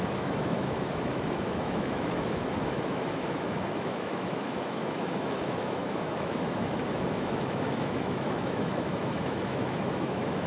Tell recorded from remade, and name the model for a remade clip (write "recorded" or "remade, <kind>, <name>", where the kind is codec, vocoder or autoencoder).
remade, autoencoder, DAC-VAE